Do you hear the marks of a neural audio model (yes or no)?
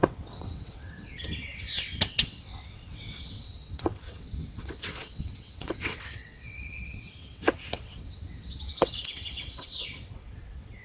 yes